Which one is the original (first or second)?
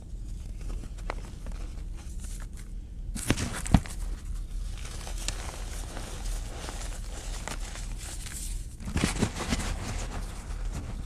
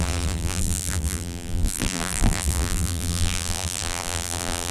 first